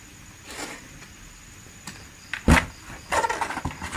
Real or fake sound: real